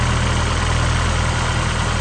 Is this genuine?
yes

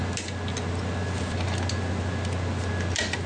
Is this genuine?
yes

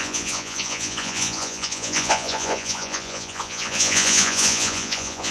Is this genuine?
no